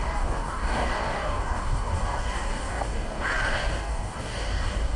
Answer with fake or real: fake